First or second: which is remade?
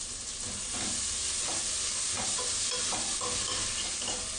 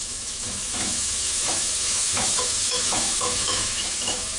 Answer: second